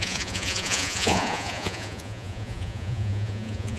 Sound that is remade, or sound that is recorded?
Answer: remade